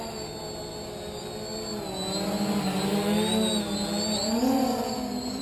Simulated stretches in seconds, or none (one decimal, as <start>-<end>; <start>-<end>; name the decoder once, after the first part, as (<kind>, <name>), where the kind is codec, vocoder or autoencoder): none